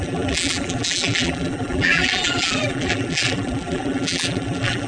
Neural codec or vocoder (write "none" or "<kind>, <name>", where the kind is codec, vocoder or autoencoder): vocoder, BigVGAN v2